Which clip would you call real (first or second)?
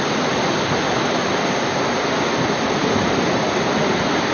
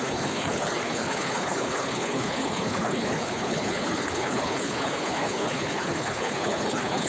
first